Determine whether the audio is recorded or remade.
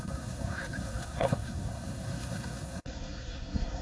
remade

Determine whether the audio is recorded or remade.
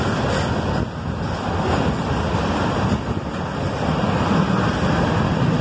recorded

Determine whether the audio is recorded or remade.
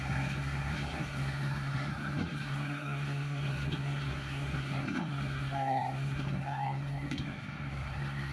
remade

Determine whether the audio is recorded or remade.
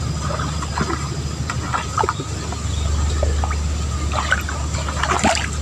recorded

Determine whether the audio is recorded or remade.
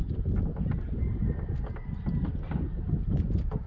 recorded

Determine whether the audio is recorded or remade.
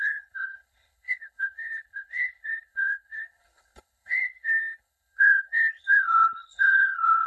remade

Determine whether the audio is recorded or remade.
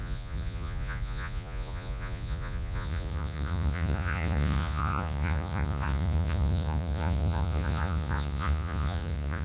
remade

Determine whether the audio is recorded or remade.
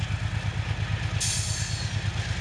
recorded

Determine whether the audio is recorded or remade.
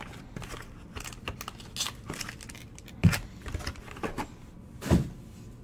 recorded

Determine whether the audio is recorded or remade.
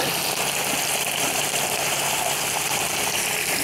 recorded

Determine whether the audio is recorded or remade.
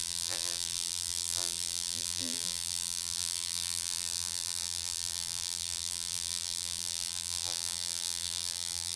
remade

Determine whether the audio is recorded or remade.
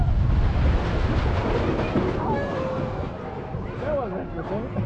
recorded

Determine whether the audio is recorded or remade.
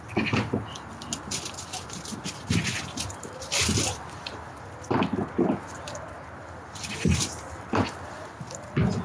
recorded